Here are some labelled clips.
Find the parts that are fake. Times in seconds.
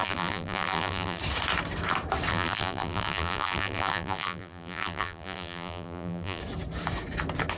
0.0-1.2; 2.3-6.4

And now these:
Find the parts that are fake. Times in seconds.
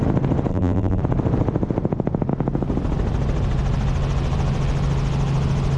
0.5-1.0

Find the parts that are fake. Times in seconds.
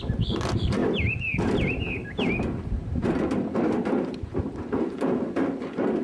0.8-4.4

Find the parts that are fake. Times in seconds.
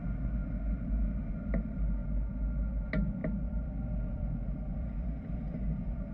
3.2-6.1